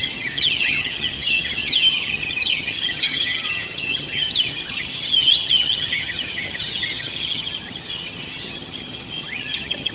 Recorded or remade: remade